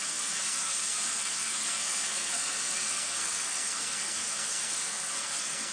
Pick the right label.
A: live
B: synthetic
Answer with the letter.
B